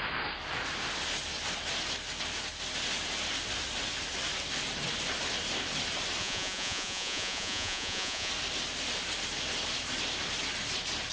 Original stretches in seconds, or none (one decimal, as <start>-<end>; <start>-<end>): 0.0-6.2; 8.3-11.1